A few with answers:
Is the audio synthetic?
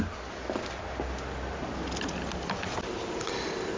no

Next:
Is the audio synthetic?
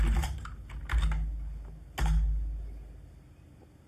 no